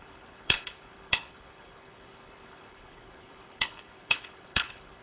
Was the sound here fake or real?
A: fake